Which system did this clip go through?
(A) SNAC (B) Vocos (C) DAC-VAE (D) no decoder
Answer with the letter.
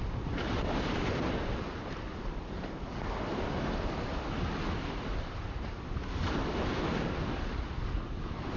D